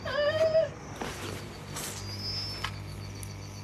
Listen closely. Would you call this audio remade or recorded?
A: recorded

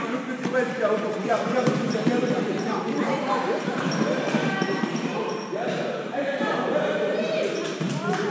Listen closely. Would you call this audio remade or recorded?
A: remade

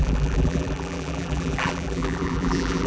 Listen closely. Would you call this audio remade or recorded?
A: remade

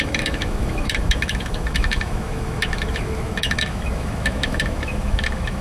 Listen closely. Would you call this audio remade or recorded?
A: remade